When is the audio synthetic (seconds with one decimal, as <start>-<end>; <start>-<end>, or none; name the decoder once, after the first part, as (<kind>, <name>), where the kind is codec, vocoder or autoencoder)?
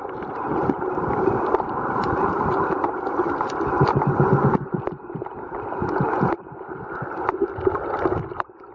0.5-3.3 (vocoder, BigVGAN v2)